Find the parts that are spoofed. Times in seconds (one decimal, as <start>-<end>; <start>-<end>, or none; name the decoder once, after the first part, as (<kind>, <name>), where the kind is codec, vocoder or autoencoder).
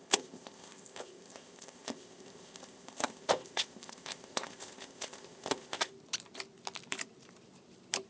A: 0.0-5.9 (codec, ZipCodec)